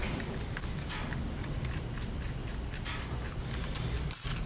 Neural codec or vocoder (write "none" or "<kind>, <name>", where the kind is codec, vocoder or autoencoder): vocoder, BigVGAN v2